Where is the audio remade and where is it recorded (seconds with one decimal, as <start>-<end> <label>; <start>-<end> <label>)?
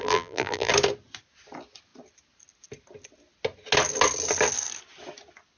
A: 0.0-0.7 remade; 0.7-5.6 recorded